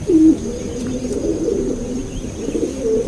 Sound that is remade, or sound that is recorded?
remade